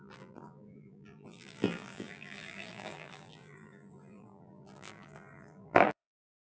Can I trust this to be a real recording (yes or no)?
no